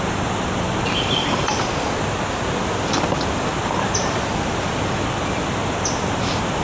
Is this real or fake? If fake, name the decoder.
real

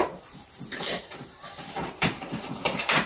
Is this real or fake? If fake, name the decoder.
fake, vocoder, BigVGAN v2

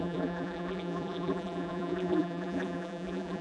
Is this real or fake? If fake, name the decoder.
fake, vocoder, BigVGAN v2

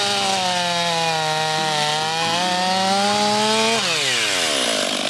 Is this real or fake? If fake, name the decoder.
real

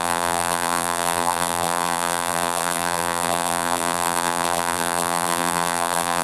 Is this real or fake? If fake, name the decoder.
fake, vocoder, BigVGAN v2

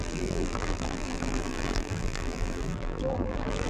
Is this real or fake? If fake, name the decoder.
fake, vocoder, BigVGAN v2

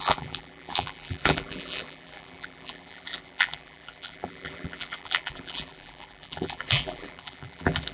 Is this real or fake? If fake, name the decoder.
fake, vocoder, BigVGAN v2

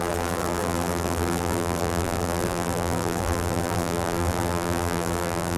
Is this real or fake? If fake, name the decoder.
fake, vocoder, BigVGAN v2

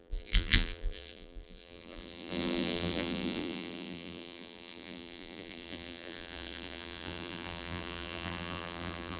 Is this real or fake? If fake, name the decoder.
fake, vocoder, BigVGAN v2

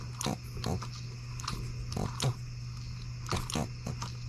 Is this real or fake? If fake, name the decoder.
real